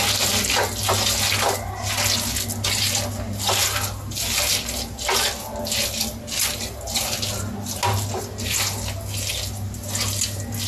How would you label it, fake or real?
real